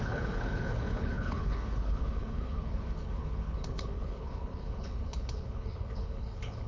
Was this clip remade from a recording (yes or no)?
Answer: yes